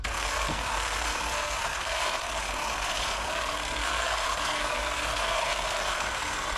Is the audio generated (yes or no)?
yes